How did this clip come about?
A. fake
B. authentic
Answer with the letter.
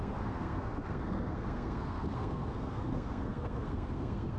A